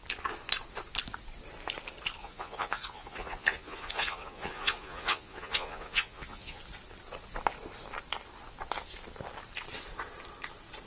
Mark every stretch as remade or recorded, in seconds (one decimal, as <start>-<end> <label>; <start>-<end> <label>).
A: 0.0-2.2 recorded; 2.2-6.6 remade; 6.6-10.9 recorded